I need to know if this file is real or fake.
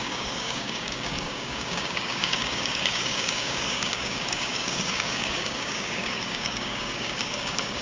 fake